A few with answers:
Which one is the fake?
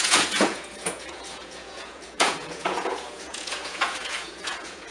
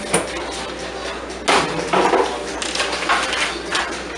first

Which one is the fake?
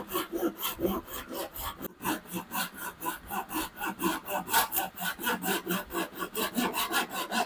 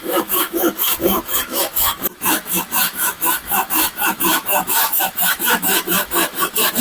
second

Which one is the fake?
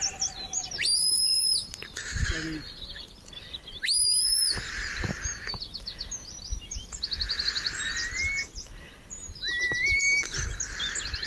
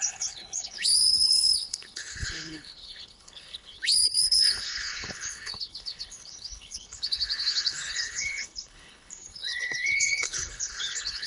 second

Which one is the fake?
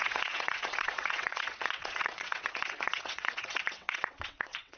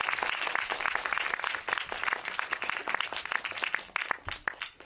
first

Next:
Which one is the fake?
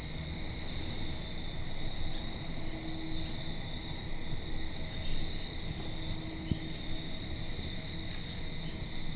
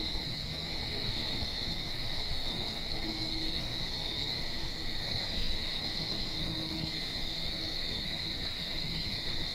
second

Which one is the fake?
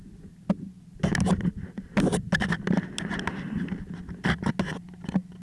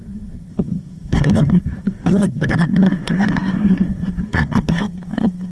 second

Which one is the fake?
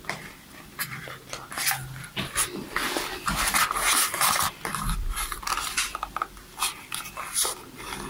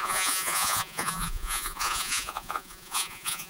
second